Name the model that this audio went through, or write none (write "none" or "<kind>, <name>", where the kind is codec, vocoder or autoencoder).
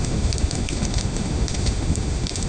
autoencoder, DAC-VAE